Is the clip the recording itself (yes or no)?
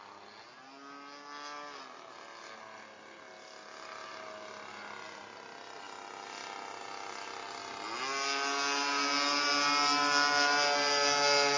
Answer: yes